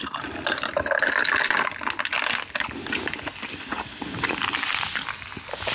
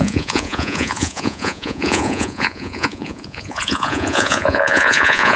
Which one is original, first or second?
first